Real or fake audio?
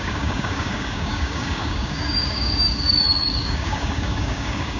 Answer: fake